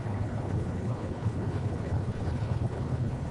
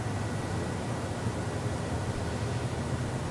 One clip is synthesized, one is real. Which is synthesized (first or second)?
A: first